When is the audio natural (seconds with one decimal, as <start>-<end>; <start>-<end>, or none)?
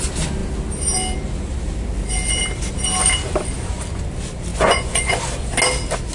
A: 0.0-4.5; 5.2-6.1